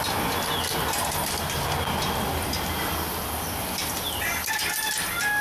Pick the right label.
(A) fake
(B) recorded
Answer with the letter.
B